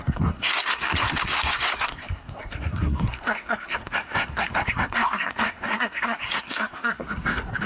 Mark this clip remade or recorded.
remade